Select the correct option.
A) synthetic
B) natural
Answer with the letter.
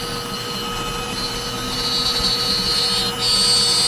B